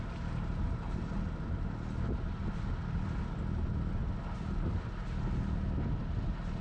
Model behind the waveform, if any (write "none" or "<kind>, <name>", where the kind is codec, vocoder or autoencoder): none